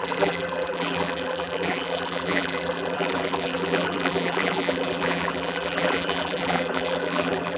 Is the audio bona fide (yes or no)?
no